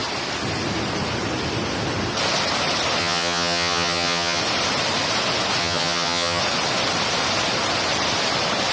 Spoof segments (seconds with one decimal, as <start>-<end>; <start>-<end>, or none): 3.0-4.4; 5.6-6.4